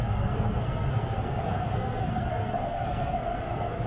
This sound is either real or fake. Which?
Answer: fake